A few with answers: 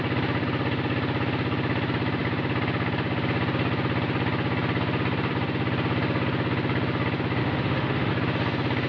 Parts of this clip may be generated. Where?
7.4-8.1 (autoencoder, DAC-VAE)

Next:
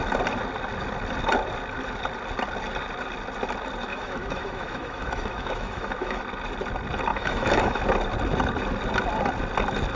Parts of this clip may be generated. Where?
3.9-6.2 (autoencoder, DAC-VAE); 7.1-7.8